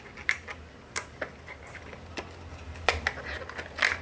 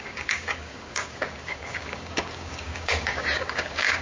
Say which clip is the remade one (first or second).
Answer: second